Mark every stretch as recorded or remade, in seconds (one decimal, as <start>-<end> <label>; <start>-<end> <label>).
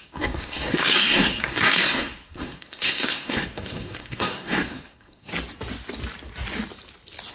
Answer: 0.0-5.3 remade; 5.3-7.3 recorded